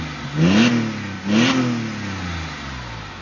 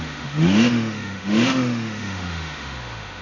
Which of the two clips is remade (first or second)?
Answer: second